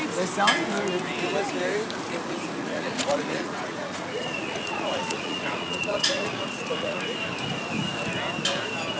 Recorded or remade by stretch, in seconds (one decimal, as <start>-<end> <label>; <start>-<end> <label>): 0.0-2.6 recorded; 2.6-7.0 remade; 7.0-9.0 recorded